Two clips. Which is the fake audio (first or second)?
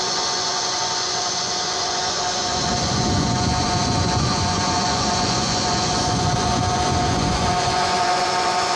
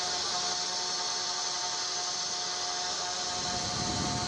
first